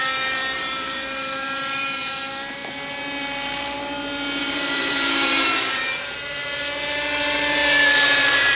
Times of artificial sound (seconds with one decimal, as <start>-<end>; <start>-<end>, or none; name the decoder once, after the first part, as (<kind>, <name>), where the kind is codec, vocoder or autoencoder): 0.0-2.6 (vocoder, BigVGAN v2); 4.4-8.5